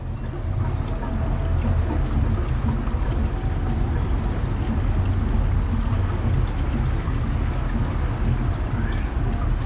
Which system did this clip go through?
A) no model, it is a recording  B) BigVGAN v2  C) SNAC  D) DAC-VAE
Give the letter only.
A